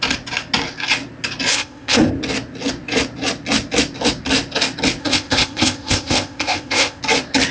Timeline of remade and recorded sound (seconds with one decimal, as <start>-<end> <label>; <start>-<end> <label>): 0.0-1.5 recorded; 1.5-2.1 remade; 2.1-5.0 recorded; 5.0-7.0 remade; 7.0-7.5 recorded